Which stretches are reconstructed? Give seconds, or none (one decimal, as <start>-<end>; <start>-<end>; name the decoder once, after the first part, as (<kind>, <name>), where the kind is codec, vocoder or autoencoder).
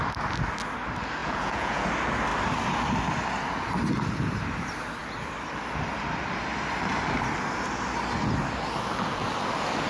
1.2-1.9 (vocoder, Vocos)